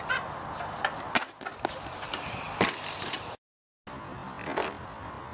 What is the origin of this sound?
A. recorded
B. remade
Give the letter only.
A